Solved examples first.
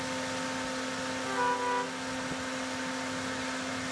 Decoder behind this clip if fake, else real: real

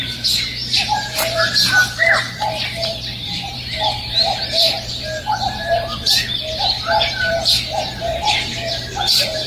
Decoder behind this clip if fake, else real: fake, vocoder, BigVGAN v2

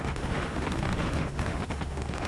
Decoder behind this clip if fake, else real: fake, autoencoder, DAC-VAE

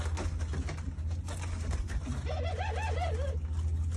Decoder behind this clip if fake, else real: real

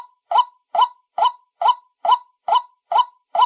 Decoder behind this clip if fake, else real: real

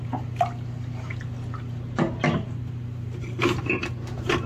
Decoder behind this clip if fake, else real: real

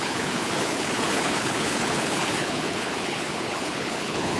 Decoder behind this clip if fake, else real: fake, codec, HILCodec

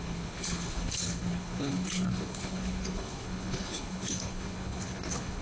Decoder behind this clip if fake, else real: fake, codec, HILCodec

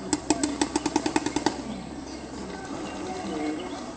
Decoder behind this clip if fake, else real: real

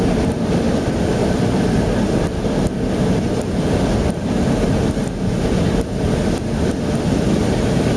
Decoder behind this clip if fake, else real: real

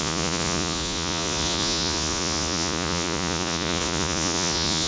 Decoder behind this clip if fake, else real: fake, vocoder, Vocos